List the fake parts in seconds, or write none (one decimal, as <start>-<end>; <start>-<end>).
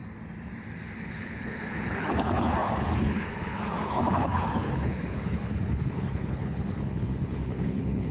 1.0-8.1